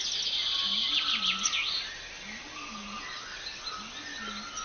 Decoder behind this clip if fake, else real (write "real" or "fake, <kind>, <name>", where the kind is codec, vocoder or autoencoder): real